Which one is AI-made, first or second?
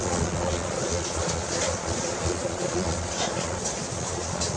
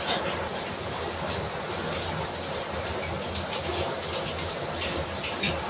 first